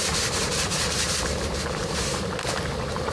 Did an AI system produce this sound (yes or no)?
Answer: yes